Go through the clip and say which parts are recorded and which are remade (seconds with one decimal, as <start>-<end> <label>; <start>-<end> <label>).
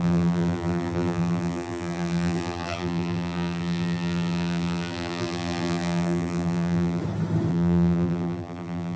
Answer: 0.0-7.0 remade; 7.0-7.5 recorded; 7.5-9.0 remade